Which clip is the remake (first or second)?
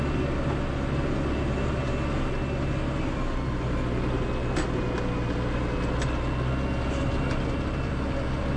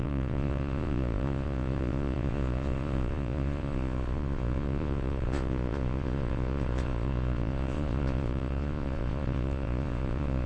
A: second